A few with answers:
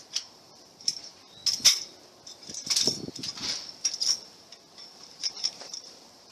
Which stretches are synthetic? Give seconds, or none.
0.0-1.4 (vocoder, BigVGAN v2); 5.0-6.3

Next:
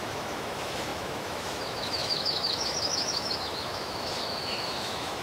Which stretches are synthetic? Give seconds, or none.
0.0-5.2 (autoencoder, DAC-VAE)

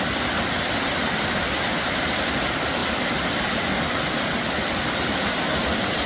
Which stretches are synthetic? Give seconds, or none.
none